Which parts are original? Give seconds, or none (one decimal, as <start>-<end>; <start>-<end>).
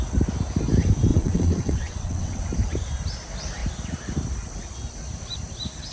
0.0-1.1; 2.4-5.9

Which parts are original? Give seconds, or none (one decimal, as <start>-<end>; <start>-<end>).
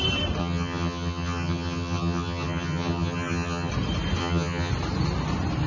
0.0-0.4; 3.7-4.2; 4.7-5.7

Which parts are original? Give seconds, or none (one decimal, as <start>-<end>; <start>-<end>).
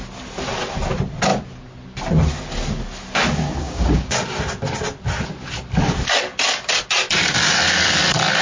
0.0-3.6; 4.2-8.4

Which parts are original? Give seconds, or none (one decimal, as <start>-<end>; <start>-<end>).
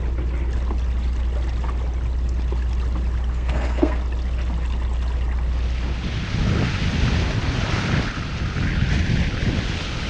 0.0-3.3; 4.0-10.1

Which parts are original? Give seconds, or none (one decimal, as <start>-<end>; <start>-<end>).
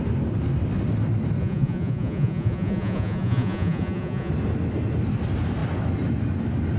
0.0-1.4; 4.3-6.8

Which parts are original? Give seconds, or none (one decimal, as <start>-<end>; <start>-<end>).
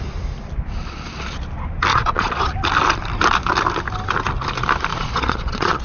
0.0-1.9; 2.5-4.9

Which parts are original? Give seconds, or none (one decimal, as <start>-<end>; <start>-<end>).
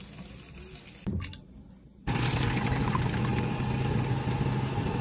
0.0-5.0